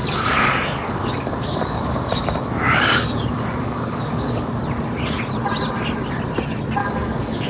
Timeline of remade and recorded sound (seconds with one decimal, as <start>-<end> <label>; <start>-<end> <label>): 0.0-4.5 remade; 4.5-6.8 recorded; 6.8-7.5 remade